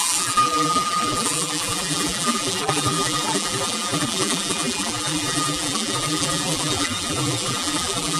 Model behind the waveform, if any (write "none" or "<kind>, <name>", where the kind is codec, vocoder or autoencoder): vocoder, BigVGAN v2